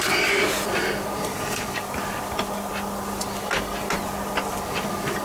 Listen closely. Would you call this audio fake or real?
real